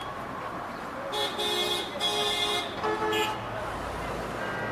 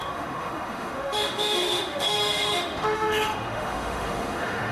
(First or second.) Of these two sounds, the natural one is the first